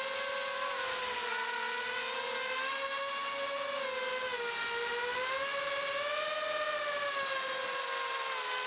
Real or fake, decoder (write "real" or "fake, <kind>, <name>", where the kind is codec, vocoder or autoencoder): real